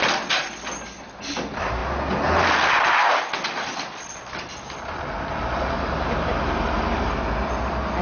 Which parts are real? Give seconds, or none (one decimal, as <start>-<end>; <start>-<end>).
0.0-8.0